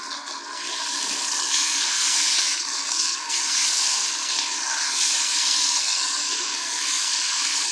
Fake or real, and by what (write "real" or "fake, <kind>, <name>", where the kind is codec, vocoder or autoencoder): fake, codec, SNAC